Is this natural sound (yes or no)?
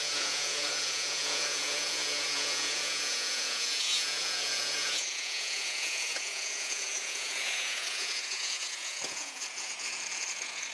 no